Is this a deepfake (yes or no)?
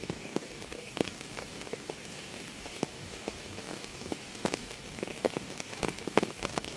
yes